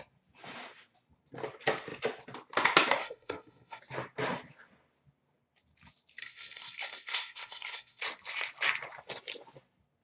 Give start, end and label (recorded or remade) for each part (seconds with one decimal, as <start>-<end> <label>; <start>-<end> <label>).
0.0-3.0 recorded; 3.0-3.8 remade; 3.8-6.2 recorded; 6.2-8.0 remade; 8.0-10.0 recorded